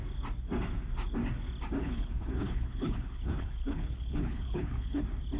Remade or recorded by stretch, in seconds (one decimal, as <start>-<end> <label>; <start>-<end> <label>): 0.0-1.8 recorded; 1.8-5.0 remade; 5.0-5.4 recorded